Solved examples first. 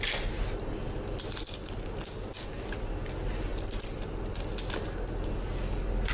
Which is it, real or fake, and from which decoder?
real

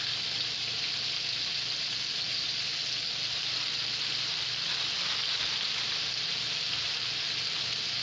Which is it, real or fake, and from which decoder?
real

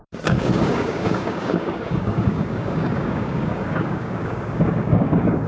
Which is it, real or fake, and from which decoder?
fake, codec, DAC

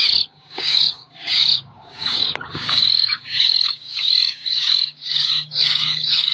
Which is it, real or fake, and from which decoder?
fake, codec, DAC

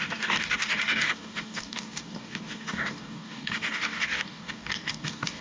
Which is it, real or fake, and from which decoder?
fake, codec, DAC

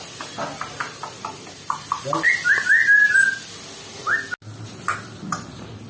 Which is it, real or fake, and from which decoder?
real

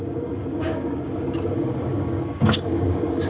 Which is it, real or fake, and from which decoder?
fake, codec, DAC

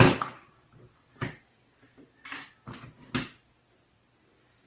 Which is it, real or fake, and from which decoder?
real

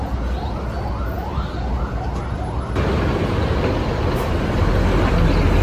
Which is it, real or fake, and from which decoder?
real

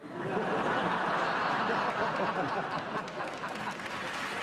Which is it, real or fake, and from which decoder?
real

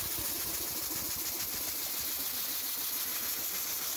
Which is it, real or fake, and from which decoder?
real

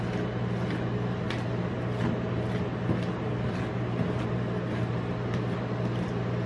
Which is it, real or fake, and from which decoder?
real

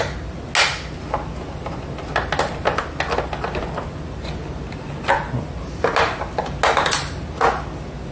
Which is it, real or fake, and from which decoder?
real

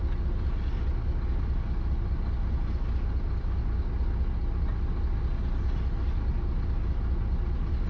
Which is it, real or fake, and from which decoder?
real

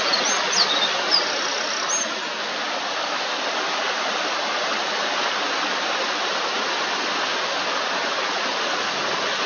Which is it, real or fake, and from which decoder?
real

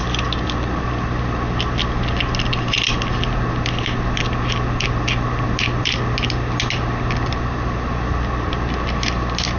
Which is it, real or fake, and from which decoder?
real